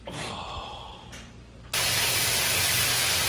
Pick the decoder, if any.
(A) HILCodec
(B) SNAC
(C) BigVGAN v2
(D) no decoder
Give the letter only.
D